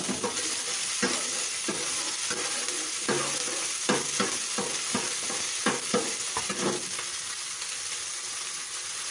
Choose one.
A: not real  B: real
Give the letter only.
B